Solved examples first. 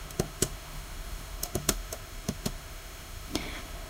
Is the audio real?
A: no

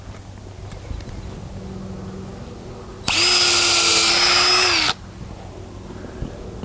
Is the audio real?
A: yes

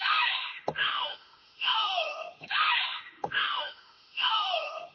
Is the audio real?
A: no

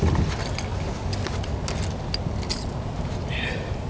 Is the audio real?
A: yes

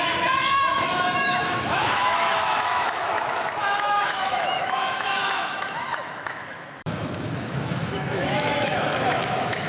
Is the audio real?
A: no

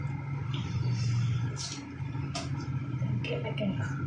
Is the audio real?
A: yes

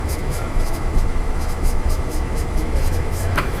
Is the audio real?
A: no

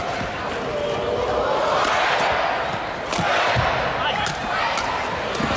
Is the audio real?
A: yes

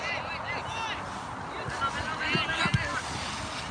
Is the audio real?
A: yes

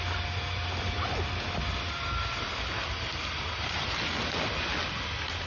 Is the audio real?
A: yes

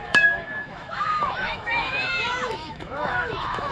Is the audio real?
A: no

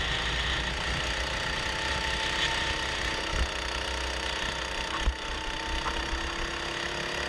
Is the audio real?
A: yes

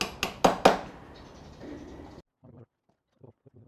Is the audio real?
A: yes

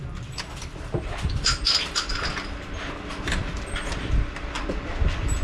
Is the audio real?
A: yes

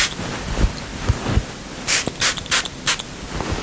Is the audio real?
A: yes